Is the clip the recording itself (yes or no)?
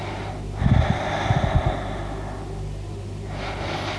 yes